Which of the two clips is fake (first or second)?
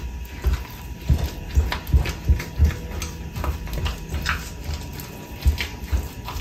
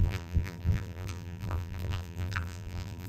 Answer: second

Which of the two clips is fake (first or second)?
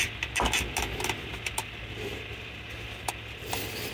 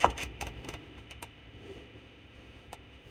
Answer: second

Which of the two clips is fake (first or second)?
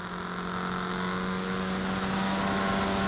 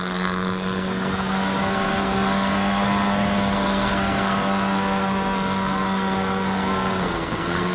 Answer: second